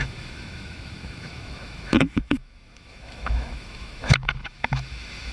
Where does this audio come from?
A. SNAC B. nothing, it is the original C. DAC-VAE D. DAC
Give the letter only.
C